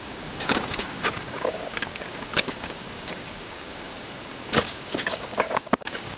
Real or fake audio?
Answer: fake